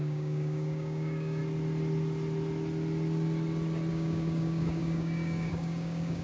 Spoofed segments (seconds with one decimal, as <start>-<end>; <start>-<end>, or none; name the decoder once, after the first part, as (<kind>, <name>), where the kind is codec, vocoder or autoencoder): 0.0-1.4 (codec, DAC); 3.9-6.2